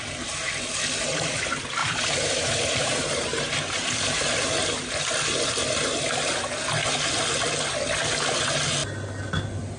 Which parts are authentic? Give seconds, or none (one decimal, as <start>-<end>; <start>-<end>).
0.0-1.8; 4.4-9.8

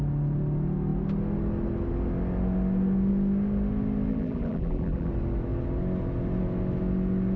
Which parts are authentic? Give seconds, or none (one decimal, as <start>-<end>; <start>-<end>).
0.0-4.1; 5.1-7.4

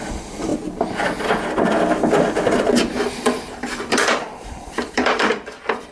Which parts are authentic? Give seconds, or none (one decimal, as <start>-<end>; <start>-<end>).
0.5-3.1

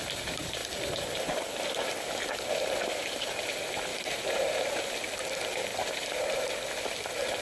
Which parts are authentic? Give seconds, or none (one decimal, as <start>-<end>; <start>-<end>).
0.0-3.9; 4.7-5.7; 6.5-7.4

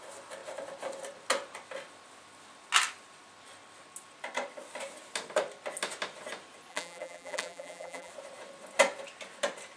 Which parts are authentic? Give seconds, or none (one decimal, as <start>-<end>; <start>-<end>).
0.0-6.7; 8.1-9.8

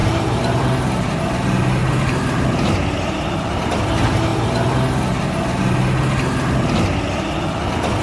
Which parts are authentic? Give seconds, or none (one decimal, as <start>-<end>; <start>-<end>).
1.2-1.8; 3.7-8.0

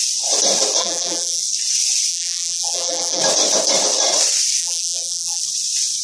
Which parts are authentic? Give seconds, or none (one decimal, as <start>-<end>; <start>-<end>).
0.0-0.8; 1.4-2.1; 3.2-4.6; 5.4-6.0